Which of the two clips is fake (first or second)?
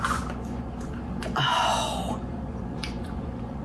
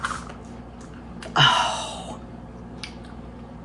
first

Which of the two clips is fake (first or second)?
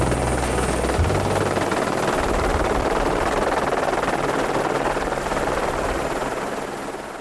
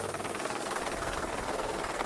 second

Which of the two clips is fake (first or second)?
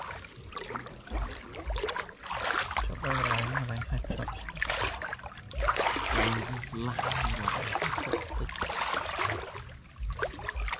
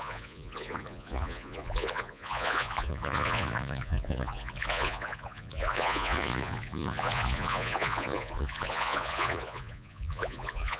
second